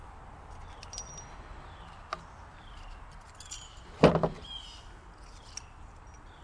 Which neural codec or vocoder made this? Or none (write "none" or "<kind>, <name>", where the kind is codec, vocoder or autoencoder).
none